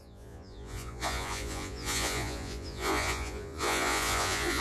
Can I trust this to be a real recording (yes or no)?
no